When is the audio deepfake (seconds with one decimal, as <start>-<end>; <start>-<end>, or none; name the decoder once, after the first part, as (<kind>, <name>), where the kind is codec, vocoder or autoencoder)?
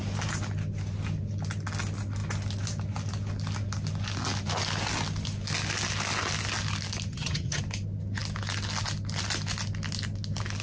7.1-7.6 (vocoder, HiFi-GAN)